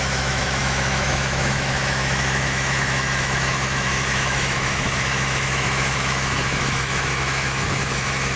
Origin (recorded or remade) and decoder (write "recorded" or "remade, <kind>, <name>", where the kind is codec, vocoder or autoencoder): remade, autoencoder, DAC-VAE